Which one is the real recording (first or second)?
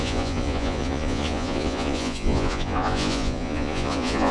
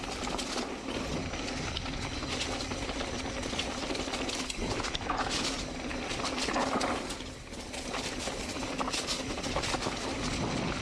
second